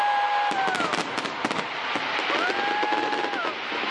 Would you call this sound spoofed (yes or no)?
no